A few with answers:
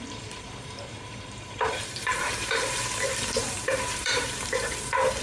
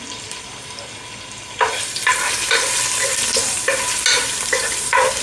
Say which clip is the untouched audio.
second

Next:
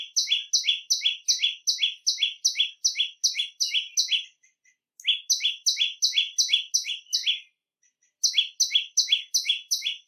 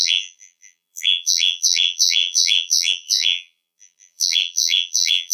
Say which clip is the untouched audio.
first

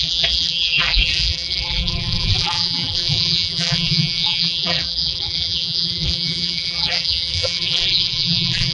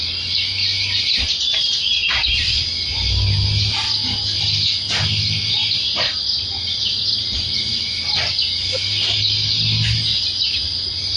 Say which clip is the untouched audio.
second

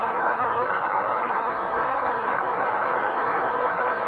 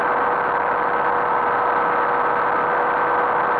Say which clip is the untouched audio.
second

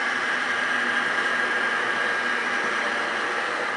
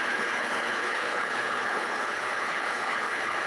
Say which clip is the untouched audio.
first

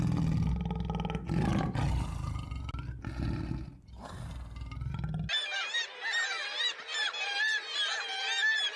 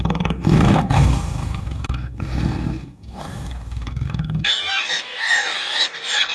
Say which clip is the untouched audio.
first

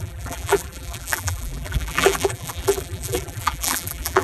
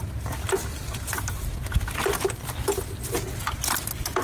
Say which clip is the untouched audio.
second